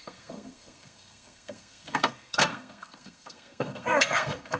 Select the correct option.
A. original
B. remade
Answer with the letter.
B